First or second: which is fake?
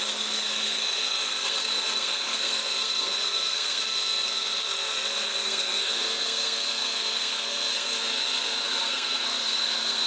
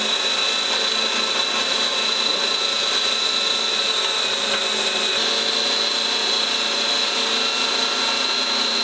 first